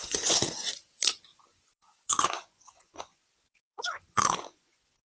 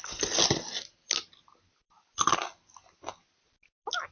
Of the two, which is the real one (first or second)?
second